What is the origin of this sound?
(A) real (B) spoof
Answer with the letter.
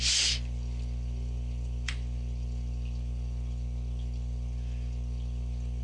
A